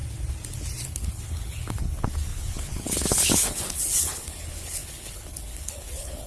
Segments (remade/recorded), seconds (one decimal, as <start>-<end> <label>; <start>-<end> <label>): 0.0-0.8 recorded; 0.8-6.3 remade